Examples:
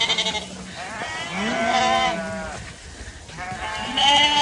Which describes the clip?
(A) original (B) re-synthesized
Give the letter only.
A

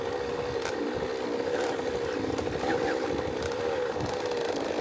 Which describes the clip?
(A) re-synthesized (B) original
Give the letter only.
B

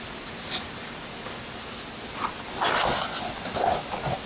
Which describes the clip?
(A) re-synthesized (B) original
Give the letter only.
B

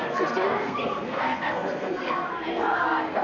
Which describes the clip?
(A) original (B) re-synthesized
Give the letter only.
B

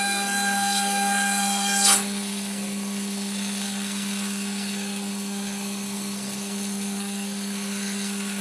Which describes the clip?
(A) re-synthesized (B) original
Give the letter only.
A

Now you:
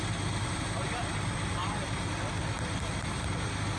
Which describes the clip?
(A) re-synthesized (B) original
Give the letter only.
B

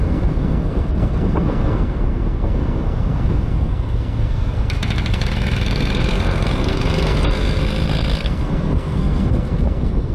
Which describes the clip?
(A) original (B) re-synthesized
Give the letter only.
B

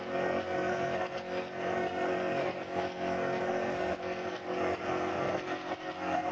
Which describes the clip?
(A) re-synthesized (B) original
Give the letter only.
A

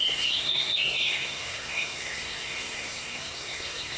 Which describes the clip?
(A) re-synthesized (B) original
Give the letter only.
A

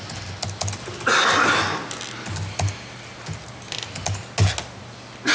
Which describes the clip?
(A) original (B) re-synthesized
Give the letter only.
A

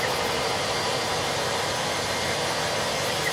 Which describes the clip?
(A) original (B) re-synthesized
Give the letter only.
A